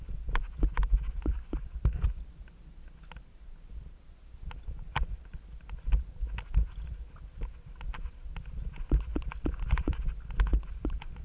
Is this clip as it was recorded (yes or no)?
yes